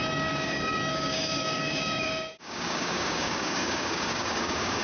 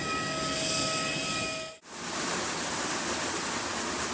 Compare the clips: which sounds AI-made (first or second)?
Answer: first